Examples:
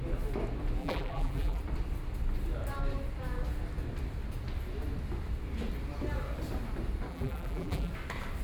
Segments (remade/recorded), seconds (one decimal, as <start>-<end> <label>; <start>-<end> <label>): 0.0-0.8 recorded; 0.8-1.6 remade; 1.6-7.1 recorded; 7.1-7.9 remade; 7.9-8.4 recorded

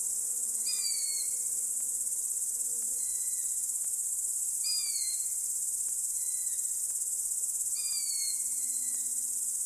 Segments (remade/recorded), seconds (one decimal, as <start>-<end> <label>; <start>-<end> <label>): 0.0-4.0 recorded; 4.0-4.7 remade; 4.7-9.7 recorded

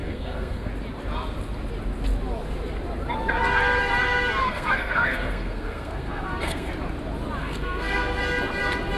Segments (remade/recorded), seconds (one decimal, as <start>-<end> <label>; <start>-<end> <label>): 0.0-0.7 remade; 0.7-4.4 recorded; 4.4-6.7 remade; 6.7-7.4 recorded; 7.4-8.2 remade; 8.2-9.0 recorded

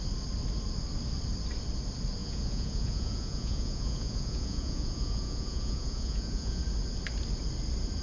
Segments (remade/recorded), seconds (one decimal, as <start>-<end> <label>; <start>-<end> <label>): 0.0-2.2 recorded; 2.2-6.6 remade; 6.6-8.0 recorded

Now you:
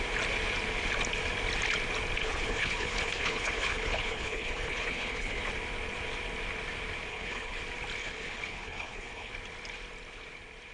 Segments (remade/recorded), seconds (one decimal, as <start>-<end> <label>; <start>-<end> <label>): 0.0-2.2 recorded; 2.2-5.4 remade; 5.4-7.1 recorded; 7.1-7.6 remade; 7.6-8.0 recorded; 8.0-9.3 remade; 9.3-10.7 recorded